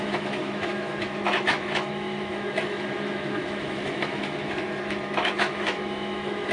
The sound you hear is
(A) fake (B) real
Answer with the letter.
A